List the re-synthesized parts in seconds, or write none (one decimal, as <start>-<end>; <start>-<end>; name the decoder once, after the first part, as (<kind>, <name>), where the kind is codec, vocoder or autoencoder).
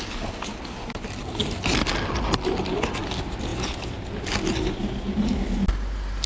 none